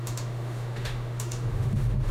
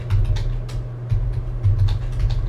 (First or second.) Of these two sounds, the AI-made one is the first